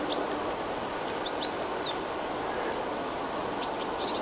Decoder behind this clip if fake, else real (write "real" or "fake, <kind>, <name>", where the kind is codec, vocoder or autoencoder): real